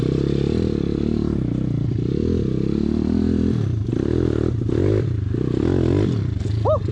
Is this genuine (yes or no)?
yes